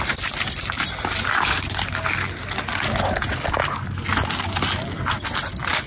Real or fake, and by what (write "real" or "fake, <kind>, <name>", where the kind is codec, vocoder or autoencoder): real